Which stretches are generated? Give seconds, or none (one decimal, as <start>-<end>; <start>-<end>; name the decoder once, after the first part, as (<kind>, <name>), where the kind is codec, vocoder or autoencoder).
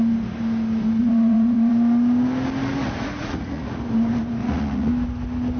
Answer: 1.0-1.7 (vocoder, Vocos); 2.8-3.8; 4.4-4.9